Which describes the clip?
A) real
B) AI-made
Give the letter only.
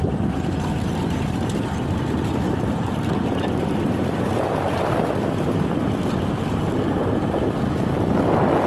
A